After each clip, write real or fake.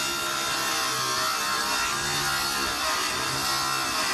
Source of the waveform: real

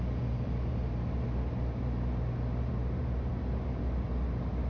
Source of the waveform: real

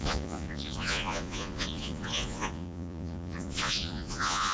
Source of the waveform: fake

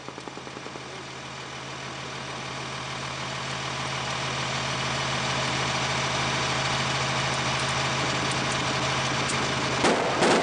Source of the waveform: real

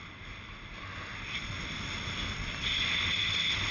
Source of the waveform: real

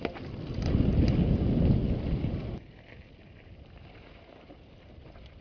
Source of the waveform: real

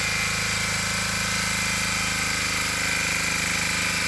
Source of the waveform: real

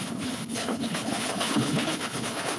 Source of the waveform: fake